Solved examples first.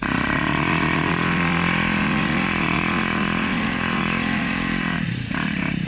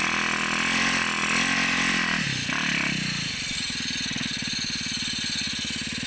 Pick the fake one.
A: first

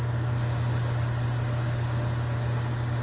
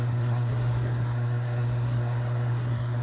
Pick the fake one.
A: second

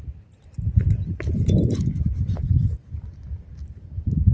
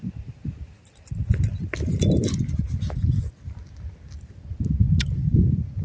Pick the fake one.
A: first